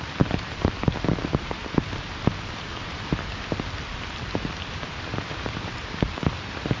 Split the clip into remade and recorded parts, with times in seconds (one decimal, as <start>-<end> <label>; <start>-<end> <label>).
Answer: 0.0-6.8 recorded